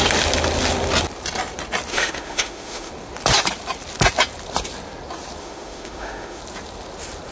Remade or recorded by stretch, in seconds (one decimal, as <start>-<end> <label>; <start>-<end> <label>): 0.0-1.9 recorded; 1.9-2.9 remade; 2.9-5.4 recorded; 5.4-6.4 remade; 6.4-7.3 recorded